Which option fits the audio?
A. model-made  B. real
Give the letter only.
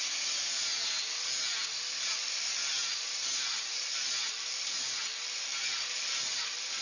B